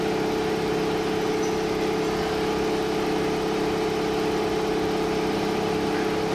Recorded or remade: recorded